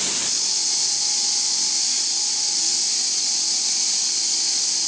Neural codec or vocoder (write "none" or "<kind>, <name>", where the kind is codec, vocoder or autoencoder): none